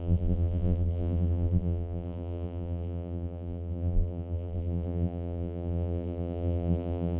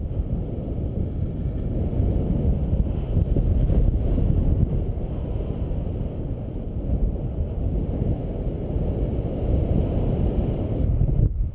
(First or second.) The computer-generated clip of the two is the first